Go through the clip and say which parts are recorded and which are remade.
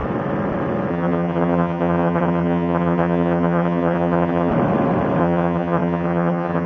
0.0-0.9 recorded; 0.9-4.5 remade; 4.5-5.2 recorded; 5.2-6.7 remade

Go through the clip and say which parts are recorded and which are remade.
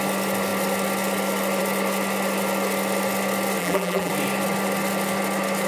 0.0-3.6 recorded; 3.6-4.1 remade; 4.1-5.7 recorded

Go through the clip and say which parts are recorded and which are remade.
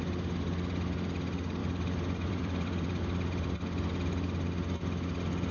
0.0-1.6 recorded; 1.6-3.0 remade; 3.0-5.5 recorded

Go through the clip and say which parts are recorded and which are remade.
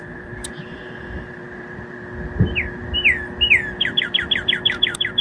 0.0-1.4 remade; 1.4-3.5 recorded; 3.5-5.2 remade